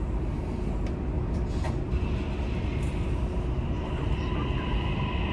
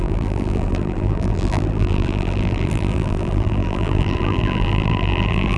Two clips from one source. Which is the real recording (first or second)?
first